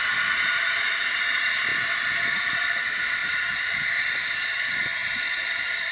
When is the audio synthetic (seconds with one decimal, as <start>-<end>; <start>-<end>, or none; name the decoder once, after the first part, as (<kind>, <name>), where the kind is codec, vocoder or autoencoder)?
5.0-5.9 (vocoder, BigVGAN v2)